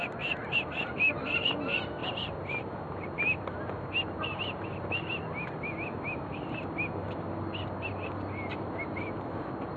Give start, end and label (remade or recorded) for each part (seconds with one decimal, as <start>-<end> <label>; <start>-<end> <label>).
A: 0.0-9.8 recorded